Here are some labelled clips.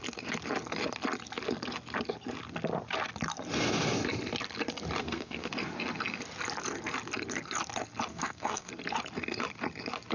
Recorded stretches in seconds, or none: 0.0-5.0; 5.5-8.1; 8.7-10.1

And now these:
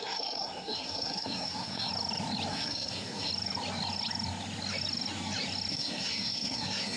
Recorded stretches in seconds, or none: 1.9-2.5; 3.3-5.7

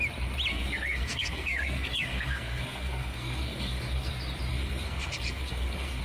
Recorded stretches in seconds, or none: 0.0-0.5; 4.1-4.5

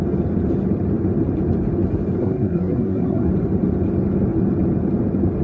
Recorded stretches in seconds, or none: 0.0-2.2; 3.3-5.4

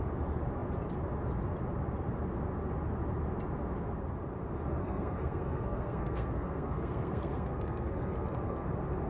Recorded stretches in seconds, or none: 0.0-4.8; 8.7-9.1

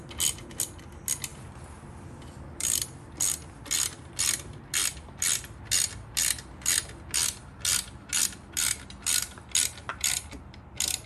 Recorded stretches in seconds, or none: 0.0-11.1

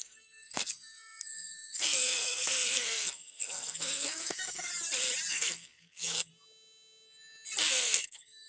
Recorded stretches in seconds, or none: 4.7-5.3; 6.3-7.7